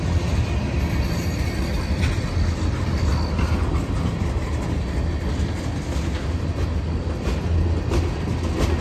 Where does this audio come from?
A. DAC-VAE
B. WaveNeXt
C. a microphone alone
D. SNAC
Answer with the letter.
C